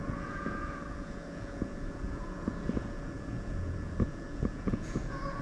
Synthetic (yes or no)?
yes